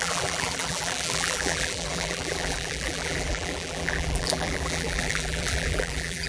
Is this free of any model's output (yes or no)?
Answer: no